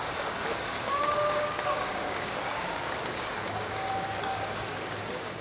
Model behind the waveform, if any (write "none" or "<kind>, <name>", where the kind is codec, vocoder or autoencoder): codec, DAC